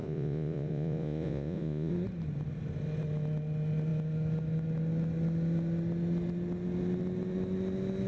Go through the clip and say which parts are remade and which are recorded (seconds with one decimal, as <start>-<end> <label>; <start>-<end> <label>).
0.0-1.9 remade; 1.9-8.1 recorded